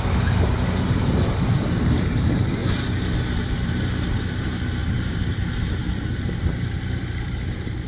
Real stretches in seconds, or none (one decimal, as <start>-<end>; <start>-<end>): 2.6-3.2

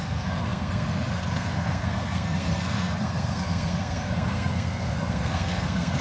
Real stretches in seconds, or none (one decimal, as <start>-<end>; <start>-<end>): none